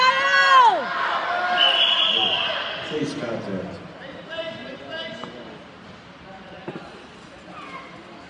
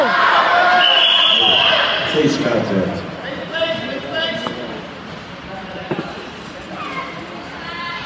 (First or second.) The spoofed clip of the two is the second